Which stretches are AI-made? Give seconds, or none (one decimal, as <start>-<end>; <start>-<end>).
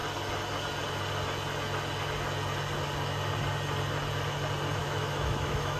4.8-5.8